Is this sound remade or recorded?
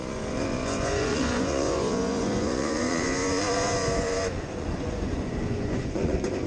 remade